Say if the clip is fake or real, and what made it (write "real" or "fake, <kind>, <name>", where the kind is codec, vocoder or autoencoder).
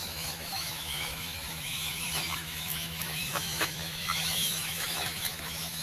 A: fake, autoencoder, DAC-VAE